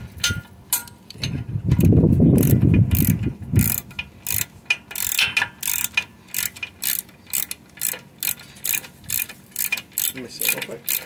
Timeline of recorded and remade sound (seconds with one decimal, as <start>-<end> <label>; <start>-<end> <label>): 0.0-0.8 recorded; 0.8-2.5 remade; 2.5-11.1 recorded